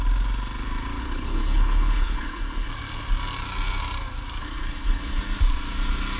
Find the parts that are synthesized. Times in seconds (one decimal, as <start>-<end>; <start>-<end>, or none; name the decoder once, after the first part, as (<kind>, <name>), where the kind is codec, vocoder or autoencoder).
1.0-2.7 (codec, HILCodec); 4.4-5.2